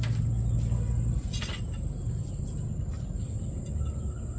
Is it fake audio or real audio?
real